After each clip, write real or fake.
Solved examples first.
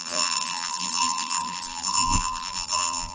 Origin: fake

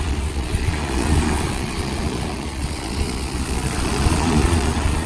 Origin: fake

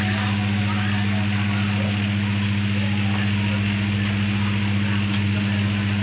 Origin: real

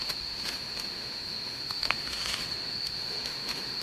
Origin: fake